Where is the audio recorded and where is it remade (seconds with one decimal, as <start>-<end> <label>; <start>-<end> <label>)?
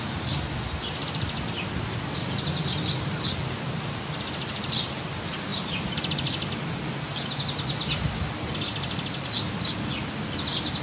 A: 0.0-10.8 recorded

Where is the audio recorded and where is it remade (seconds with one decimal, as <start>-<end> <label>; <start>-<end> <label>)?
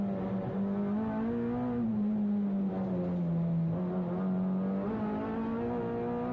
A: 0.0-6.3 recorded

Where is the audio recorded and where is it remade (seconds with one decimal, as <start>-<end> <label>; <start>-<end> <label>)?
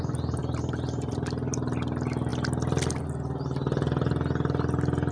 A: 0.0-5.1 recorded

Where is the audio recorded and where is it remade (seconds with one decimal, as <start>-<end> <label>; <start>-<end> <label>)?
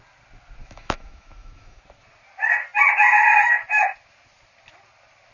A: 0.0-0.6 recorded; 0.6-1.8 remade; 1.8-5.3 recorded